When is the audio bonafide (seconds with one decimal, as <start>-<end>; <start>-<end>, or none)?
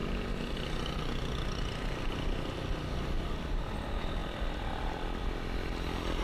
0.0-6.2